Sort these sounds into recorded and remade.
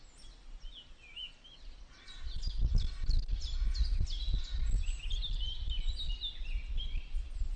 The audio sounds recorded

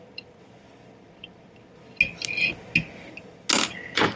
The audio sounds recorded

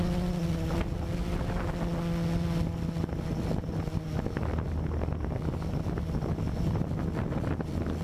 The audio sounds recorded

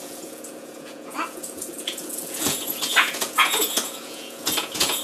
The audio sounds remade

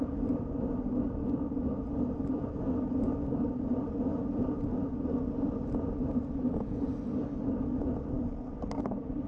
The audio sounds recorded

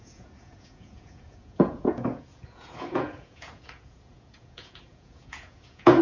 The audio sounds remade